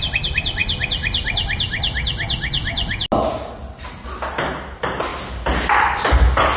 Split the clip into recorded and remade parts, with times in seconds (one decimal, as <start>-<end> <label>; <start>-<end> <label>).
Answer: 0.0-6.6 recorded